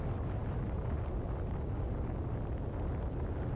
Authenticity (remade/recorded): recorded